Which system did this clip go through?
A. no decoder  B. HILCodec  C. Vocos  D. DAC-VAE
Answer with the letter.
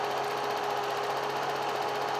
A